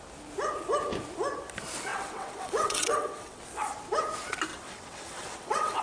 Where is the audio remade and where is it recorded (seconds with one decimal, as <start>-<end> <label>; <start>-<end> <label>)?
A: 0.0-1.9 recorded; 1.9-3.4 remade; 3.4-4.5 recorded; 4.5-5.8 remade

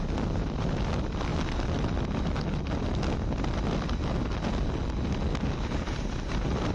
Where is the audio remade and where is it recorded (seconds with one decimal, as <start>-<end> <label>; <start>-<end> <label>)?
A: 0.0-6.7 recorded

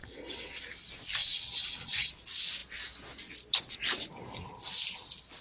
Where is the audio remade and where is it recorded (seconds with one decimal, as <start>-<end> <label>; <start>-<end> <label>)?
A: 0.0-0.6 remade; 0.6-1.2 recorded; 1.2-2.1 remade; 2.1-5.4 recorded

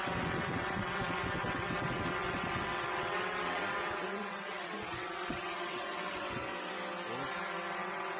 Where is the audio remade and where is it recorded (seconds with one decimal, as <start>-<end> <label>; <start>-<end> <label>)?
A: 0.0-6.5 remade; 6.5-7.7 recorded; 7.7-8.2 remade

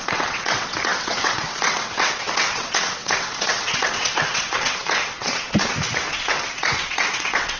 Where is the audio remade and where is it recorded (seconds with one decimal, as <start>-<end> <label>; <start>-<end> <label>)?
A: 0.0-7.6 remade

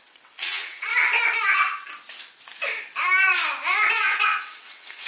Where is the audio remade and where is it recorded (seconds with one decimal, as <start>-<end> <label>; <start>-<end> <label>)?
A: 0.0-0.9 remade; 0.9-3.9 recorded; 3.9-5.1 remade